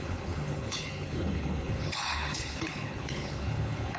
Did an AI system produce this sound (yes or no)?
yes